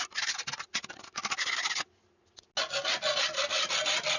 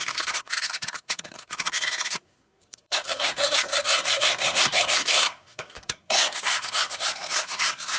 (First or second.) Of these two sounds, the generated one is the second